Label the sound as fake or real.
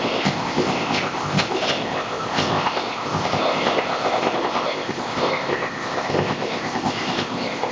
fake